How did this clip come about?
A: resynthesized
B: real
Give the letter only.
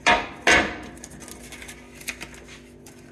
B